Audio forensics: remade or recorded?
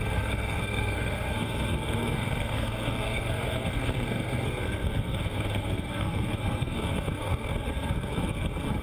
remade